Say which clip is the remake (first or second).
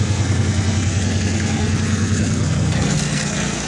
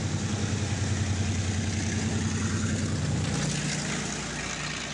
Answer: first